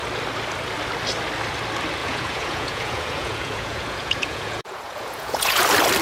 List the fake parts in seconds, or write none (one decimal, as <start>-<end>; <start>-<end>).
2.0-5.6